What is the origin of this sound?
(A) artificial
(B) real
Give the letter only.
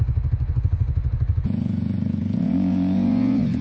A